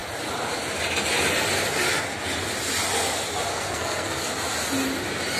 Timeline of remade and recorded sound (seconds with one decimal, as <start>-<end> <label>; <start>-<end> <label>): 0.0-3.5 recorded; 3.5-4.2 remade; 4.2-5.4 recorded